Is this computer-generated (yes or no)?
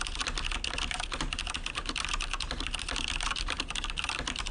no